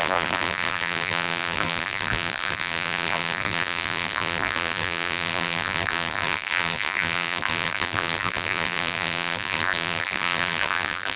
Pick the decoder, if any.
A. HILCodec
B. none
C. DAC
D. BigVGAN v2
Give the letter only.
D